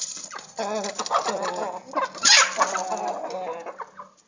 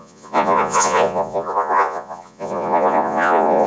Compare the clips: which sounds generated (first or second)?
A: second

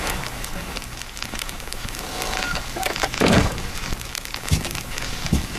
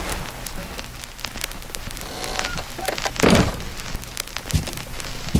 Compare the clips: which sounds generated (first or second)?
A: first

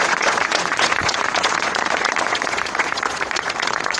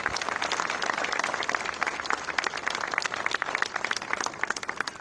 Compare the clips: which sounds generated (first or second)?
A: first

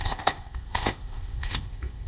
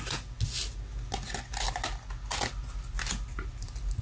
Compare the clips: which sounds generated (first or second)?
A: first